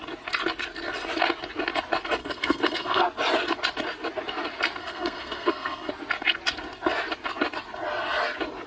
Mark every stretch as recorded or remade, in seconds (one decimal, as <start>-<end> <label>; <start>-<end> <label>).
0.0-2.2 recorded; 2.2-3.0 remade; 3.0-4.8 recorded; 4.8-5.9 remade; 5.9-8.7 recorded